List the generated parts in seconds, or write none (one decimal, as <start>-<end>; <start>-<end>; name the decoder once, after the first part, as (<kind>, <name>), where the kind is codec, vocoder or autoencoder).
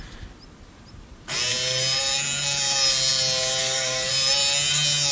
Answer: 3.6-4.1 (codec, DAC)